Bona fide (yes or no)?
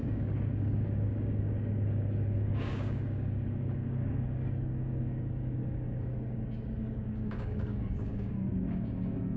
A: no